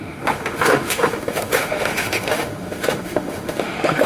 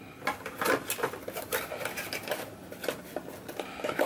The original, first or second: second